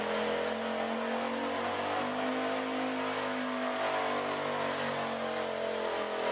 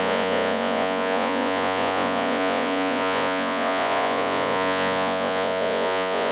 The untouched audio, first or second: first